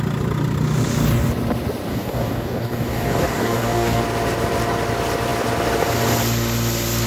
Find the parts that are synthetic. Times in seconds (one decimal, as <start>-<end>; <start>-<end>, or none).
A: 1.9-4.0